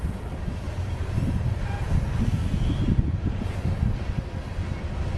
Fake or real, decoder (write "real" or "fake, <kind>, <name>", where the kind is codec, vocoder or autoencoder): fake, vocoder, BigVGAN v2